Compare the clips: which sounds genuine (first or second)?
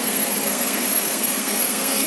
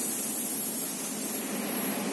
second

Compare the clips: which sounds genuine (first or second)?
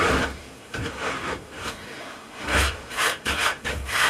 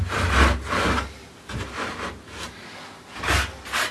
second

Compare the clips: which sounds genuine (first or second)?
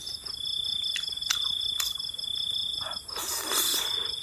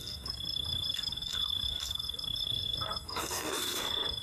first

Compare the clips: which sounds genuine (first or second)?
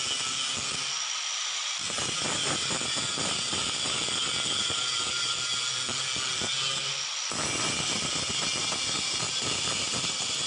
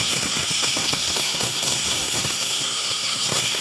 first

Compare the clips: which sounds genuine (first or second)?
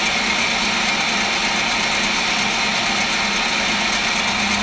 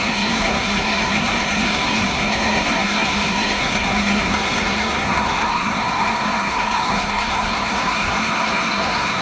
first